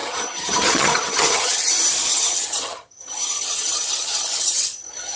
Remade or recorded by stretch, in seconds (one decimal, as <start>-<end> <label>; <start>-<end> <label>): 0.0-1.7 remade; 1.7-2.1 recorded; 2.1-5.2 remade